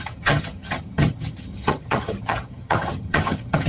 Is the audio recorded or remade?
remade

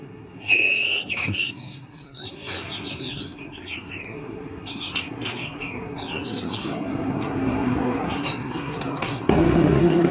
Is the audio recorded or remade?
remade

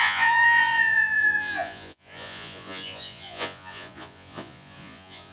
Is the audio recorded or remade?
remade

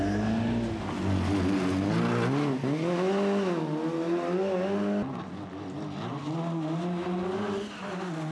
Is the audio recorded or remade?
recorded